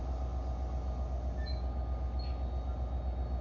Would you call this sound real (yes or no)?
yes